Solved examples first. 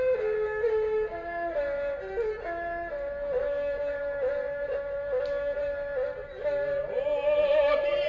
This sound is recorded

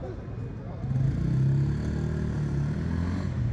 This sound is recorded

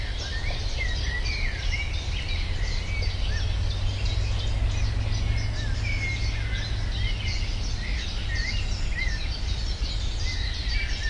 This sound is recorded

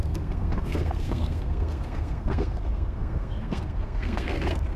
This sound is remade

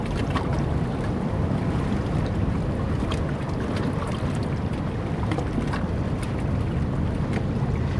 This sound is recorded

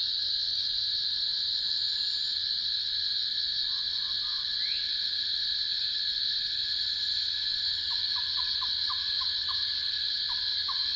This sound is recorded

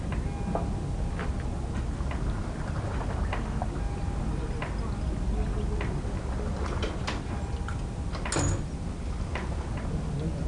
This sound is recorded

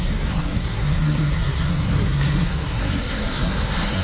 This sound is remade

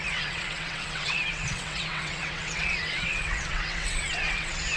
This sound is remade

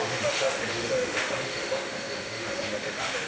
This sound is remade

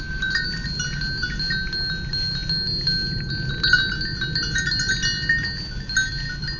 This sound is recorded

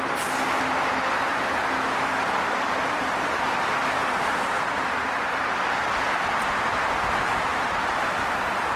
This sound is recorded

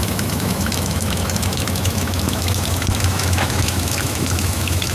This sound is remade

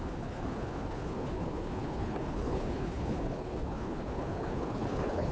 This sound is remade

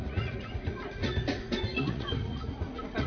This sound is remade